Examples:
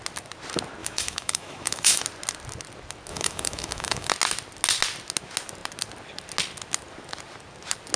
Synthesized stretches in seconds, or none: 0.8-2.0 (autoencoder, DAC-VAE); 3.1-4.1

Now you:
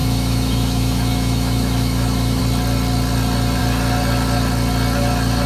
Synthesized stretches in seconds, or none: 0.0-2.4 (autoencoder, DAC-VAE)

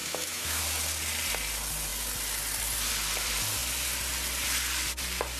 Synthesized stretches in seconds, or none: 0.0-0.6 (autoencoder, DAC-VAE)

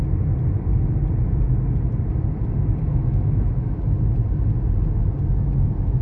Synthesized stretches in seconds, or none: 2.9-3.8 (autoencoder, DAC-VAE)